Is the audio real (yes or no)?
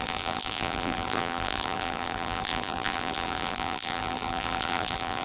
no